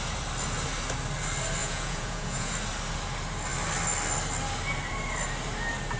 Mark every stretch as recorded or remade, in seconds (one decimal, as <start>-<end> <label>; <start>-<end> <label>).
0.0-1.6 recorded; 1.6-2.5 remade; 2.5-6.0 recorded